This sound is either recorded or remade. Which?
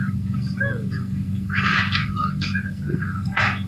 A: remade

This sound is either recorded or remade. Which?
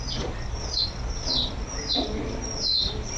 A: recorded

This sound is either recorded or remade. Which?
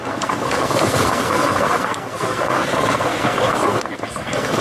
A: remade